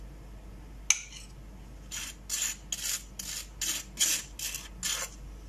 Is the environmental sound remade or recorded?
recorded